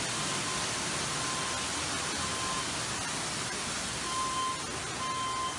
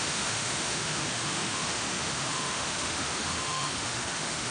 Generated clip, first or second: second